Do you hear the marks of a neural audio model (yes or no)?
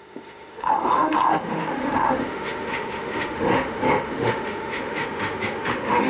yes